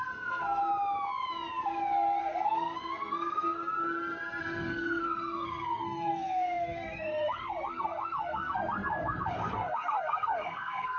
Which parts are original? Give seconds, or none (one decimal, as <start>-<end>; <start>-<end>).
0.6-2.2; 3.6-4.4